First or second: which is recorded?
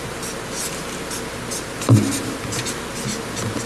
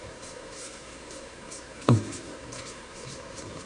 first